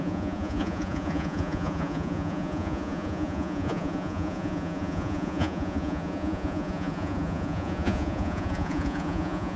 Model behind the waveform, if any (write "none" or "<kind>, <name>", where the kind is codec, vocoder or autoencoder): vocoder, Vocos